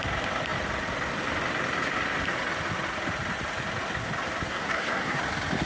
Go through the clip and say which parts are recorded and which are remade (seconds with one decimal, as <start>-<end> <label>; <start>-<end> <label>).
0.0-4.5 recorded; 4.5-5.2 remade; 5.2-5.7 recorded